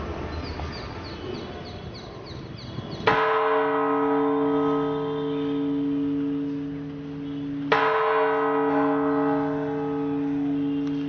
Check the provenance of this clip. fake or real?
real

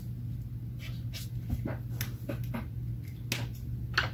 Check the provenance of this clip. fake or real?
real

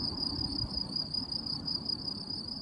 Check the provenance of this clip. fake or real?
real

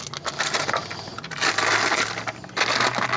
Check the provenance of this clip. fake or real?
real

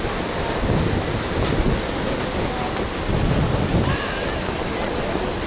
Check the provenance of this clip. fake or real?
real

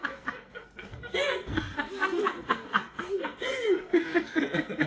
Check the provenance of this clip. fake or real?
fake